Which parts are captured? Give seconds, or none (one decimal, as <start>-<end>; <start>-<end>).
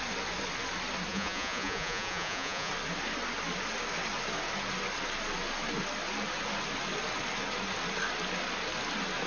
0.0-1.1; 2.7-9.3